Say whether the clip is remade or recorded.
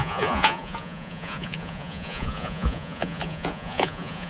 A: remade